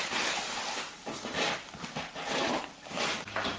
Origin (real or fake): real